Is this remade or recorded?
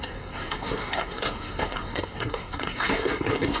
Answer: remade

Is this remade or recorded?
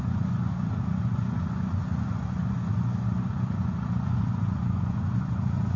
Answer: remade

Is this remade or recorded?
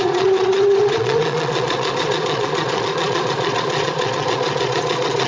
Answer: remade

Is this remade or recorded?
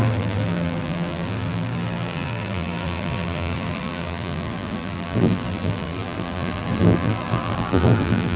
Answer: remade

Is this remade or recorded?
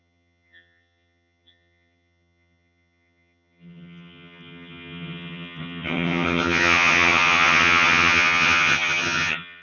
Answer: remade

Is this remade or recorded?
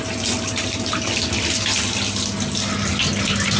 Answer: recorded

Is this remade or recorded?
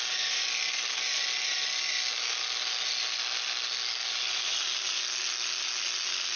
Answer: recorded